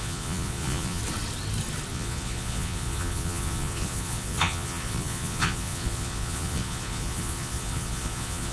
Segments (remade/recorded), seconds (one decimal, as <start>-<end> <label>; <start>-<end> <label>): 0.0-1.0 remade; 1.0-1.9 recorded; 1.9-8.5 remade